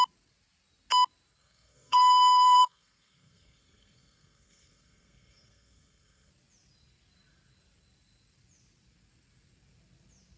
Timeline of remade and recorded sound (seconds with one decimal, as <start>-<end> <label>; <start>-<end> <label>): 0.0-1.4 recorded; 1.4-6.3 remade; 6.3-10.4 recorded

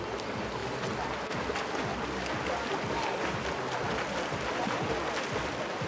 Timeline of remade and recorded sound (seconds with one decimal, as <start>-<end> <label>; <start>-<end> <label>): 0.0-5.9 recorded